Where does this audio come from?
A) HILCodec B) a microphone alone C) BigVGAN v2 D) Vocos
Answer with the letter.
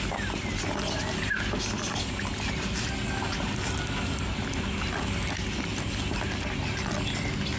B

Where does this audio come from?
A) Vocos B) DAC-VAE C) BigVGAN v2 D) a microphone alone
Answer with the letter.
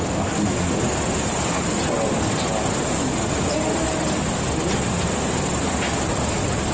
D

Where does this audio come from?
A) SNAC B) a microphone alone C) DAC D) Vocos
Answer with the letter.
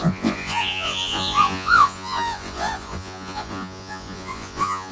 D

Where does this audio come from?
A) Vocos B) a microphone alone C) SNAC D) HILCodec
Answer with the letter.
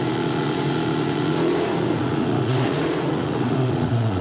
A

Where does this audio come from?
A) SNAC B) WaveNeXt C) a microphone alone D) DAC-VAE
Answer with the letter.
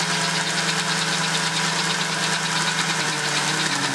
C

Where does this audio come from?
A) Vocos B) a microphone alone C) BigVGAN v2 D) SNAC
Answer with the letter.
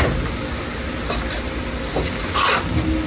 B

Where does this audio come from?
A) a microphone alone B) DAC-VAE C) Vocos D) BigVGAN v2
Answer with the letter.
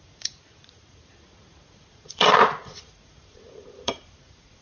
C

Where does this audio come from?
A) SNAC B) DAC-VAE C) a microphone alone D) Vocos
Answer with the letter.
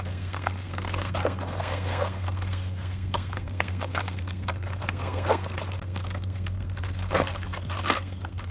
A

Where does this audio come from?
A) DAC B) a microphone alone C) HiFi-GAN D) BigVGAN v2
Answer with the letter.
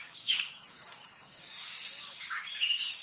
A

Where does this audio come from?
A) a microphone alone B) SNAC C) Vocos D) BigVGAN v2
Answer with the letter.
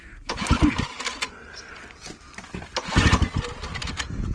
A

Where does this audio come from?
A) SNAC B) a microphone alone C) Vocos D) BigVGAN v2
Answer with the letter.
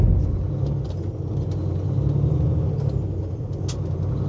B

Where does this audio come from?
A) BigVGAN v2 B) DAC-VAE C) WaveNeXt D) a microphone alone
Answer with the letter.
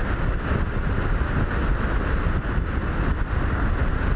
D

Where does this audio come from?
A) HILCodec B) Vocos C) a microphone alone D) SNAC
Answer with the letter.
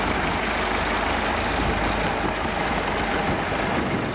C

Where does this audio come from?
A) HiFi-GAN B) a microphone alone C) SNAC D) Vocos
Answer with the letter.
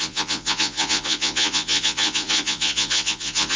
D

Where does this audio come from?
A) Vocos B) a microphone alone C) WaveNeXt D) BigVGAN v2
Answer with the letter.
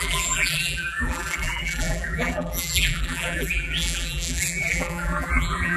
D